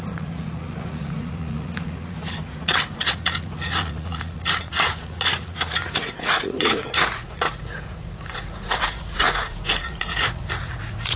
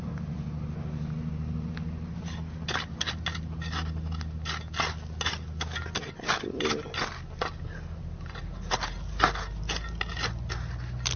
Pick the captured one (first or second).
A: second